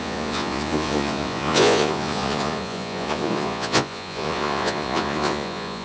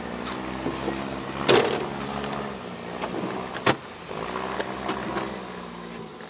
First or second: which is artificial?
first